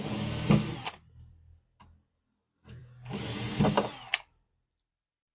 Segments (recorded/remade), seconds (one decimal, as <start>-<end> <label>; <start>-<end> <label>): 0.0-5.4 recorded